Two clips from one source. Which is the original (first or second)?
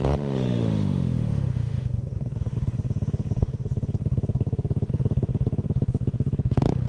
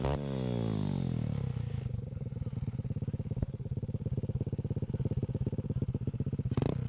second